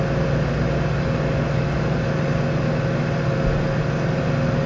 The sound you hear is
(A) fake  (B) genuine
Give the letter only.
B